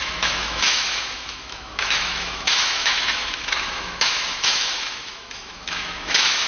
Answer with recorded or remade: remade